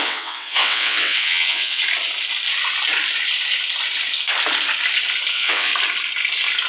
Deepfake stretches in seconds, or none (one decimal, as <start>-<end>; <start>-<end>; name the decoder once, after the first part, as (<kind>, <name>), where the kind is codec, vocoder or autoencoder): 0.0-1.8 (vocoder, WaveNeXt); 5.3-5.7